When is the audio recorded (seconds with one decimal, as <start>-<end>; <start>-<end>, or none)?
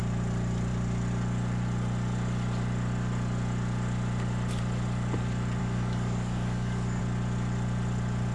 0.0-5.6; 7.0-8.3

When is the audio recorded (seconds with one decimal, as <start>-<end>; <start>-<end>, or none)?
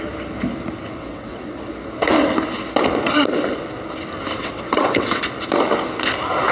0.0-0.9; 1.7-4.4; 5.2-6.5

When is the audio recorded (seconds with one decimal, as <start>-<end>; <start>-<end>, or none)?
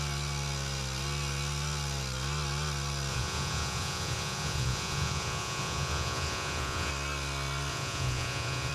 0.0-3.1; 6.9-7.7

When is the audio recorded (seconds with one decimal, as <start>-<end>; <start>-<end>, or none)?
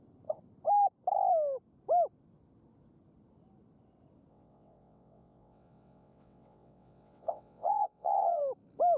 0.0-4.3; 8.4-9.0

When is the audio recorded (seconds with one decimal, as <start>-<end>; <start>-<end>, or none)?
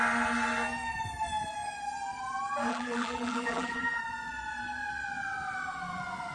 0.0-2.7; 4.0-6.3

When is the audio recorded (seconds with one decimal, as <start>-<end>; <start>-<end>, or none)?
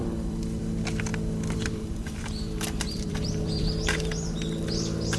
0.6-1.1; 3.7-5.2